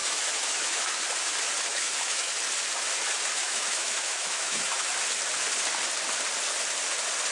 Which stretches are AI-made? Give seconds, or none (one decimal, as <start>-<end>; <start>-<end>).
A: 0.0-1.0; 1.7-2.3; 3.4-4.9

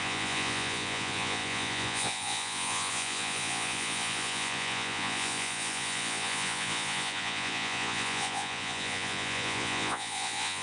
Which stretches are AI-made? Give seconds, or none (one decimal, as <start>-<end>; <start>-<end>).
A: 0.0-10.6